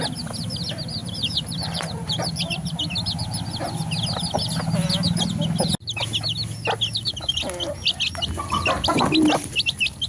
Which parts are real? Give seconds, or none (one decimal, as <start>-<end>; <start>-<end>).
0.0-1.0; 2.8-10.1